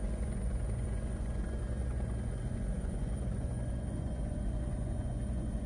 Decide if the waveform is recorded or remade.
remade